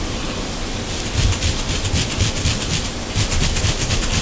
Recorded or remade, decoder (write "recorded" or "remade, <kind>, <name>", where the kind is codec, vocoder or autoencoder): recorded